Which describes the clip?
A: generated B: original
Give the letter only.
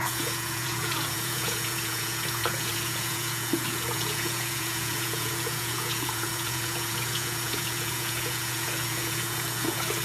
A